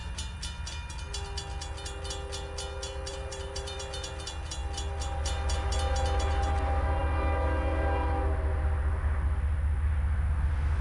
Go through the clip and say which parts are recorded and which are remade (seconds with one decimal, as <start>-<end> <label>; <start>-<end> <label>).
0.0-3.1 recorded; 3.1-3.8 remade; 3.8-10.8 recorded